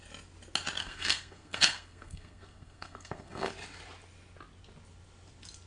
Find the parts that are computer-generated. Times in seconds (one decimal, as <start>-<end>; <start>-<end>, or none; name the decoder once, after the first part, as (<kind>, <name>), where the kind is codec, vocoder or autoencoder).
0.8-3.5 (codec, SNAC)